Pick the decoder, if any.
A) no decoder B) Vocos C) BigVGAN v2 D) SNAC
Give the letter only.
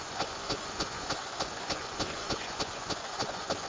B